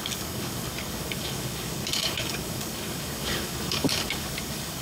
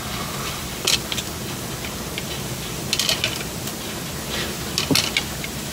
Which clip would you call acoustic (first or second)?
second